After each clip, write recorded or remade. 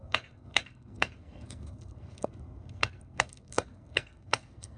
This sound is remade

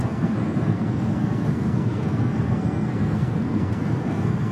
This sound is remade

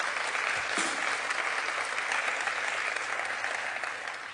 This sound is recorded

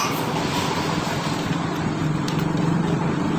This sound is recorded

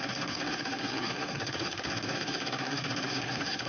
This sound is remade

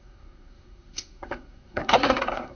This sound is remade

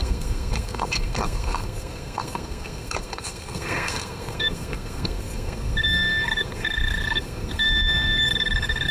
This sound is remade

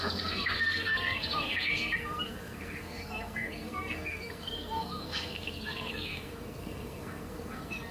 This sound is remade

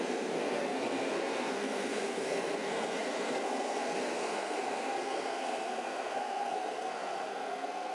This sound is remade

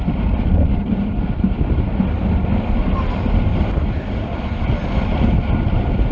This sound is recorded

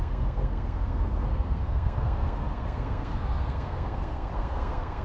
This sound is remade